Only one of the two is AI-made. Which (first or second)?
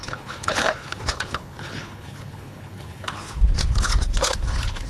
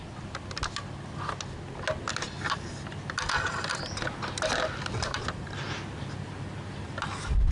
first